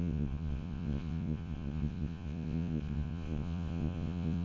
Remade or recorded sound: remade